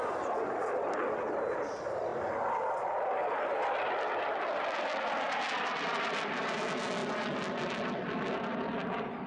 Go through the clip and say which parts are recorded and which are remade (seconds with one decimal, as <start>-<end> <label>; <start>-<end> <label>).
0.0-9.3 recorded